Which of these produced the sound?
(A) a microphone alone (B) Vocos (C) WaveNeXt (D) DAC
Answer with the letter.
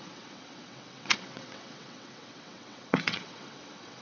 C